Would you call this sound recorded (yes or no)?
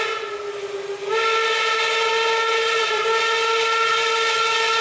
yes